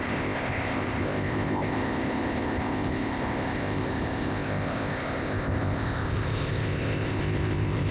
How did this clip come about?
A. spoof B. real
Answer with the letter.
A